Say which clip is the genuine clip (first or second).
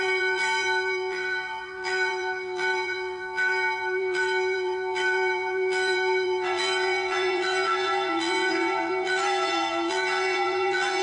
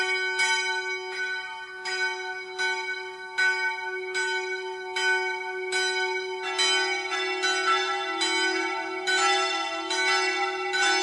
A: second